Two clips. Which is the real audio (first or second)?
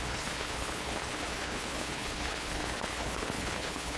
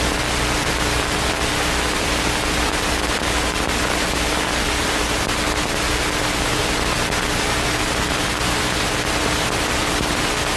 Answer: second